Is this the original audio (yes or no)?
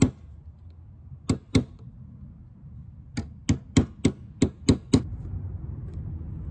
yes